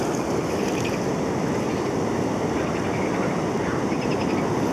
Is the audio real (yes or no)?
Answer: yes